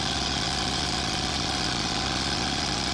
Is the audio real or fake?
fake